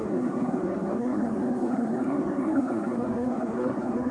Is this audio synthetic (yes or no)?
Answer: yes